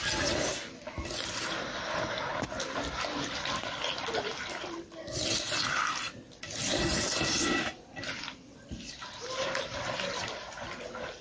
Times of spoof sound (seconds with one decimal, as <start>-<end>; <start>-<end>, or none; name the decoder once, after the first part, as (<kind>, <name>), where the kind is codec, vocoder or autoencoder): none